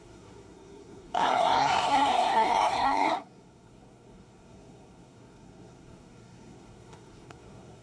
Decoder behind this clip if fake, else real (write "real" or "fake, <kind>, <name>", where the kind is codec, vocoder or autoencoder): fake, codec, SNAC